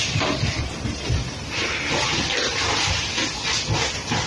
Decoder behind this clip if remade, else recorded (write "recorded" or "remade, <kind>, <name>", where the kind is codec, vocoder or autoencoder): recorded